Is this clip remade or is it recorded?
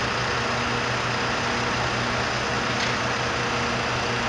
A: recorded